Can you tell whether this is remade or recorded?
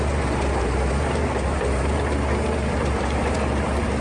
remade